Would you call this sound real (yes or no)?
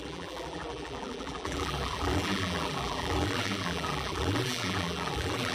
no